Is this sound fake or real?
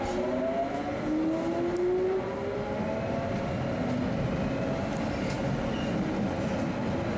real